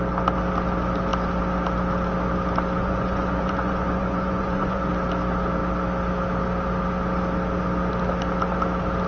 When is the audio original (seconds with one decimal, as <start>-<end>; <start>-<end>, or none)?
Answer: 0.0-2.8; 4.9-9.1